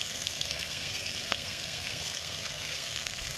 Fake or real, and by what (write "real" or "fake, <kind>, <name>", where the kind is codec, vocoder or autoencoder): fake, codec, SNAC